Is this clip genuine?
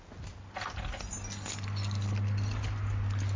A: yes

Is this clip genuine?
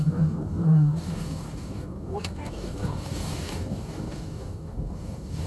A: no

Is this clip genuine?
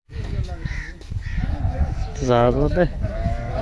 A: no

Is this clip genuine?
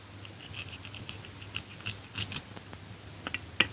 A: yes